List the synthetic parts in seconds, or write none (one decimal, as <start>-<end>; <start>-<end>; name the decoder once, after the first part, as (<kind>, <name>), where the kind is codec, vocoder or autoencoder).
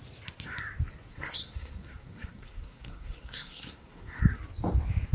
1.1-4.2 (codec, SNAC)